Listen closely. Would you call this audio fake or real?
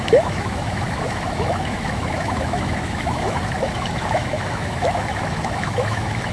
fake